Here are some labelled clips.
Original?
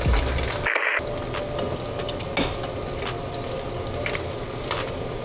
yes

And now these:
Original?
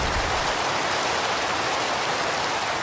yes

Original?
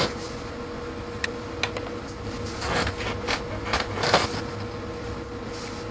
yes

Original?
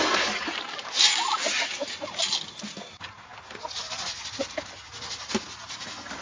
yes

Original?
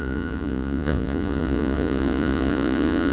no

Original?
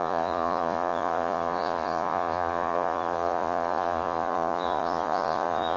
no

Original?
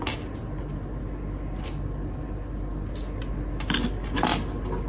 yes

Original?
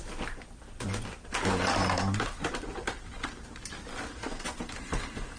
yes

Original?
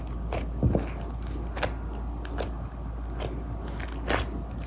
yes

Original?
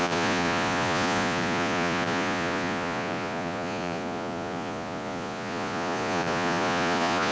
no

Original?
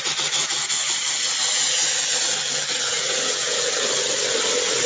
yes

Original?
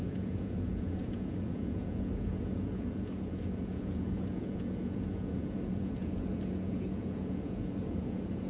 no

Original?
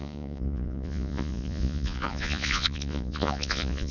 no